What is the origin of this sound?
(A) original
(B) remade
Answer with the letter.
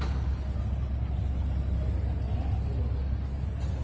A